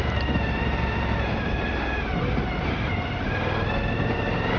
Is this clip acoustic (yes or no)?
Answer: yes